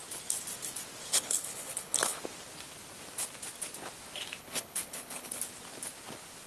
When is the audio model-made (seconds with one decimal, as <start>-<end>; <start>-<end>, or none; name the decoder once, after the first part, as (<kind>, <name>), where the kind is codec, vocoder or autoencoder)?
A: 1.1-2.2 (codec, HILCodec); 4.4-5.4

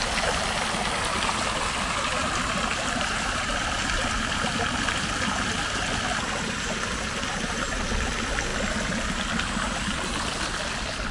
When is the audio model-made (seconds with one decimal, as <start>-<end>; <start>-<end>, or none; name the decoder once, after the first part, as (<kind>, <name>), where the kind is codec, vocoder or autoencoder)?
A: 2.7-3.5 (vocoder, BigVGAN v2)

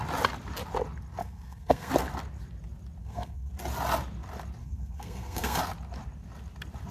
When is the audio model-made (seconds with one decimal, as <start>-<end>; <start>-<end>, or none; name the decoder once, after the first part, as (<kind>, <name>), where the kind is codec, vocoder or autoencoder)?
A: 1.2-1.9 (codec, SNAC); 3.0-3.5; 4.6-5.6

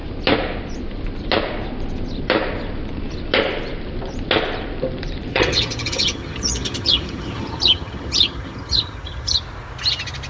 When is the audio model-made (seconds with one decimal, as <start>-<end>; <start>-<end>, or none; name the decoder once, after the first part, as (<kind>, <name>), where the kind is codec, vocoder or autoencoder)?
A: 5.3-9.4 (vocoder, HiFi-GAN)